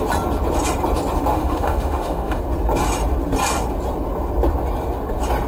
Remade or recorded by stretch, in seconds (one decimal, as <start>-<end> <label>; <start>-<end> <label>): 0.0-1.3 recorded; 1.3-2.4 remade; 2.4-5.5 recorded